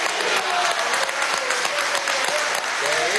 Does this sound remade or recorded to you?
recorded